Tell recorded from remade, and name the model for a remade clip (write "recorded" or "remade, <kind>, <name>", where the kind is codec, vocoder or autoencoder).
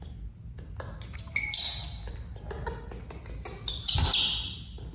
recorded